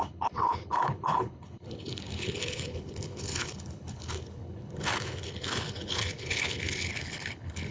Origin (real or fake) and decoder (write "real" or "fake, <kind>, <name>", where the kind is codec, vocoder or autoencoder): fake, codec, HILCodec